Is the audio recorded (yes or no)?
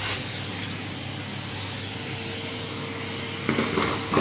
yes